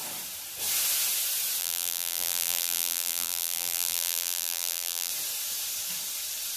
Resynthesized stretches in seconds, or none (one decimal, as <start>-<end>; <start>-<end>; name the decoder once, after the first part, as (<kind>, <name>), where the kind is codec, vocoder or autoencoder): 1.6-5.1 (vocoder, BigVGAN v2)